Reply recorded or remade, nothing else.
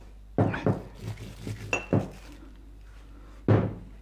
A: recorded